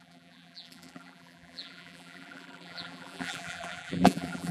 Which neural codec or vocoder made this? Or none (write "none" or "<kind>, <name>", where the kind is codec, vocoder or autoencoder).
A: vocoder, BigVGAN v2